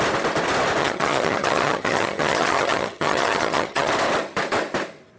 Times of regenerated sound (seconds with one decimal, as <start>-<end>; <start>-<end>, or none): 0.8-3.9